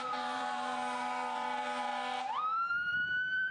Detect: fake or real fake